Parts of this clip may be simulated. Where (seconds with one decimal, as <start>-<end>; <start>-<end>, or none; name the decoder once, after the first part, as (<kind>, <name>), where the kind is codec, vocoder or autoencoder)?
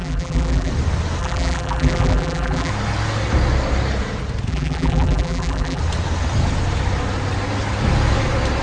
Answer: 0.0-0.7 (vocoder, BigVGAN v2); 1.2-2.7; 4.5-5.8